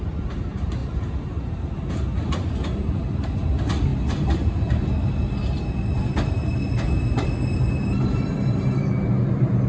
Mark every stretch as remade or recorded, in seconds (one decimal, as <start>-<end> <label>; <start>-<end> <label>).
0.0-9.7 recorded